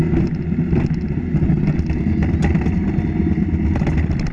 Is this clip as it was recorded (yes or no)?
yes